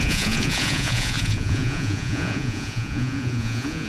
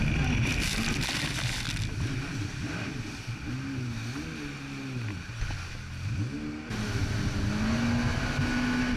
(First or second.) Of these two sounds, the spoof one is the first